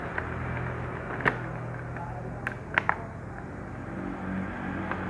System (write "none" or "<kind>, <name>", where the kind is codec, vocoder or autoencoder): none